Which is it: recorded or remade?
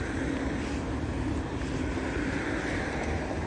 recorded